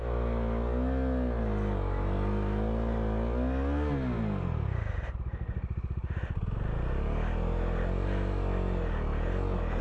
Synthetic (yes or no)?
no